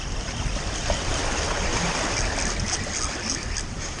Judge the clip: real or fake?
real